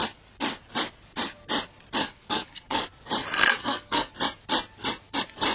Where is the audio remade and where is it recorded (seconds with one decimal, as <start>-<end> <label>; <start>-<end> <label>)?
0.0-2.0 recorded; 2.0-2.9 remade; 2.9-3.6 recorded; 3.6-4.1 remade; 4.1-5.5 recorded